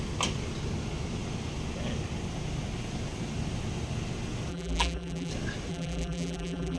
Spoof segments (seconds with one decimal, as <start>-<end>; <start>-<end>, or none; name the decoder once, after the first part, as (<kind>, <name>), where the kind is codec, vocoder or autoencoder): 4.5-5.3 (vocoder, BigVGAN v2); 5.7-6.8